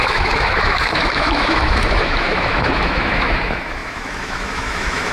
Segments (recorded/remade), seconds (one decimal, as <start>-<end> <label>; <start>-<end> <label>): 0.0-5.1 remade